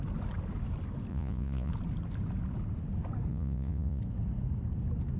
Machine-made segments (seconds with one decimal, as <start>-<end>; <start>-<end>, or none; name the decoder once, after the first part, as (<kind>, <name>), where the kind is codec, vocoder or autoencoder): 1.1-1.7 (vocoder, Vocos); 3.3-4.0